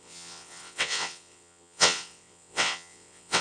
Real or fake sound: fake